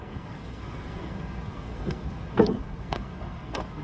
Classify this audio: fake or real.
fake